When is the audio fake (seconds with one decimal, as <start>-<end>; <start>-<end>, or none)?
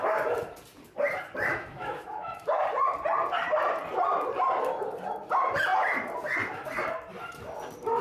1.5-2.5